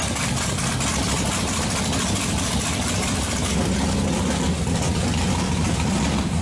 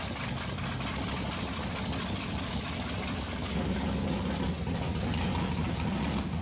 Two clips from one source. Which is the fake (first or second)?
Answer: first